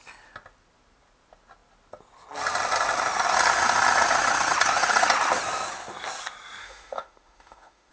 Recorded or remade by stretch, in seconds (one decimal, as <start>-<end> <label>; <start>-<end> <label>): 0.0-6.6 recorded; 6.6-7.9 remade

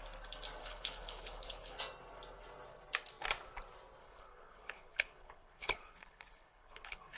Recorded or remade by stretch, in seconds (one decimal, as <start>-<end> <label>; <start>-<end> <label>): 0.0-0.6 recorded; 0.6-1.8 remade; 1.8-4.0 recorded; 4.0-7.2 remade

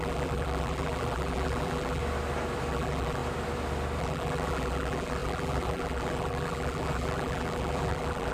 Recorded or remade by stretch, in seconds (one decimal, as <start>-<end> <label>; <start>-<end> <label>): 0.0-2.0 remade; 2.0-2.7 recorded; 2.7-3.2 remade; 3.2-4.0 recorded; 4.0-8.3 remade

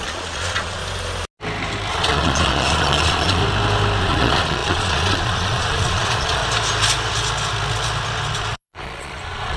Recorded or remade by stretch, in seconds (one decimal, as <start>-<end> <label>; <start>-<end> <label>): 0.0-0.8 remade; 0.8-1.9 recorded; 1.9-3.4 remade; 3.4-4.0 recorded; 4.0-6.4 remade; 6.4-8.5 recorded; 8.5-9.6 remade

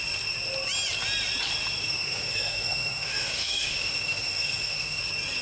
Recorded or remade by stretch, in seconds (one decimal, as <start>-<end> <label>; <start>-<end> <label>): 0.0-1.8 recorded; 1.8-5.0 remade; 5.0-5.4 recorded

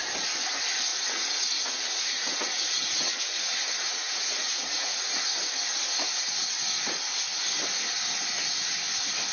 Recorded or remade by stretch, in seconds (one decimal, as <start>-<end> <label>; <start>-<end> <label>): 0.0-0.9 recorded; 0.9-5.0 remade; 5.0-9.3 recorded